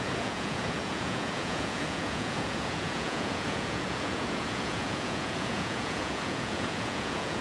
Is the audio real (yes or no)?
no